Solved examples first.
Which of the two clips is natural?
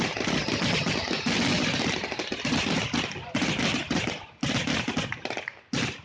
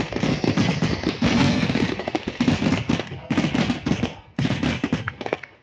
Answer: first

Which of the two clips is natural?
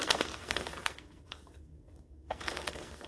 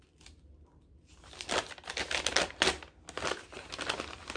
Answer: second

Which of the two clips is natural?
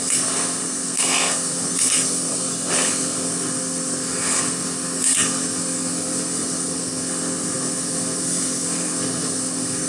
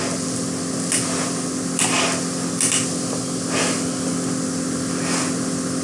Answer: second